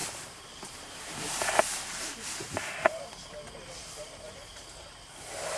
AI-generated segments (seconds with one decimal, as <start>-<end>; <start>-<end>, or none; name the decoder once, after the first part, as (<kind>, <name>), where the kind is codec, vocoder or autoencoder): 0.0-3.1 (vocoder, BigVGAN v2); 3.8-4.4